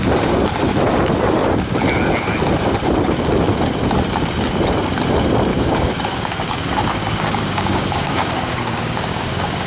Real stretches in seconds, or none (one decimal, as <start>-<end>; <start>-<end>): 0.0-5.5